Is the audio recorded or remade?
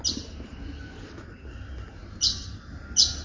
recorded